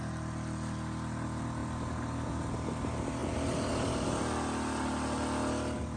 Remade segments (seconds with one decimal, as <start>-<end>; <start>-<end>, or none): 3.2-3.7